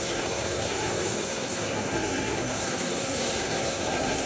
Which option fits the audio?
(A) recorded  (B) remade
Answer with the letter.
B